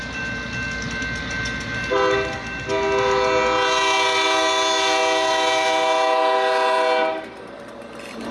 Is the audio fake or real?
real